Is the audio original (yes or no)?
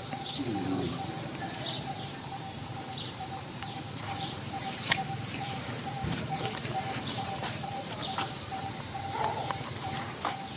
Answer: no